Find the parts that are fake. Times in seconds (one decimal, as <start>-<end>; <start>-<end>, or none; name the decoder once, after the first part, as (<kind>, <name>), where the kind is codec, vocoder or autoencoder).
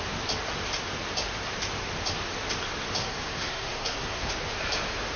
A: 3.0-4.3 (codec, SNAC)